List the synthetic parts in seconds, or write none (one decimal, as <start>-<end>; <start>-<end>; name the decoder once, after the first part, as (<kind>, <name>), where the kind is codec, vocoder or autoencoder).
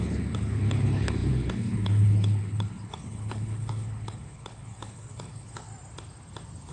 0.0-5.7 (codec, HILCodec)